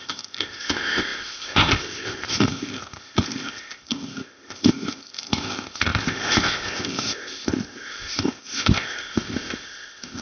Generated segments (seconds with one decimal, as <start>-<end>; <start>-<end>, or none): 0.0-10.2